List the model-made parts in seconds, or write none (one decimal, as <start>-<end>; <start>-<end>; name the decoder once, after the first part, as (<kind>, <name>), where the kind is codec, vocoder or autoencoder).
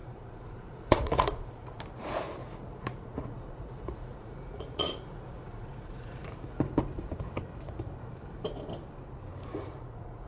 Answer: 0.0-1.8 (vocoder, Vocos); 2.4-6.6; 9.5-10.3